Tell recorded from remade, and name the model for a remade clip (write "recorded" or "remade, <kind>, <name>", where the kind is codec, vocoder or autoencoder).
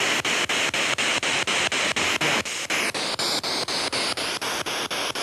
recorded